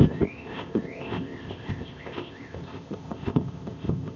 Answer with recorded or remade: remade